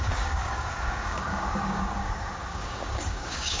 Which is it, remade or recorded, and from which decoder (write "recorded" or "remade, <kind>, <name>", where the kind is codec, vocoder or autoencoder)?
remade, codec, DAC